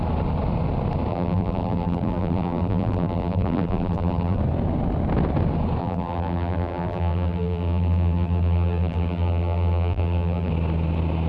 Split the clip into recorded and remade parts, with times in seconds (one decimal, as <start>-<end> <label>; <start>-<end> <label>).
0.0-1.1 recorded; 1.1-4.4 remade; 4.4-5.8 recorded; 5.8-10.5 remade; 10.5-11.3 recorded